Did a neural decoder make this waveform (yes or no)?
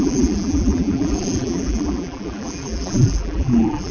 yes